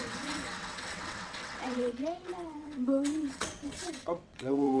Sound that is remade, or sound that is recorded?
remade